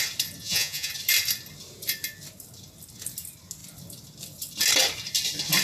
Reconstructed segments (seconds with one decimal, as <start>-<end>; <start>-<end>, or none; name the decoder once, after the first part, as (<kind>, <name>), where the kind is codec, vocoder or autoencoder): 0.4-0.9 (vocoder, Vocos)